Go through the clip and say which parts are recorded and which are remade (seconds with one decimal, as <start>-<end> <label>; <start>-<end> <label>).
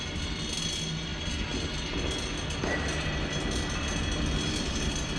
0.0-5.2 recorded